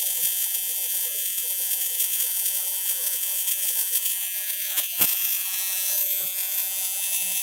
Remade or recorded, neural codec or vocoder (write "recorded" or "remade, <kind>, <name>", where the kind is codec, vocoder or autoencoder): remade, vocoder, Vocos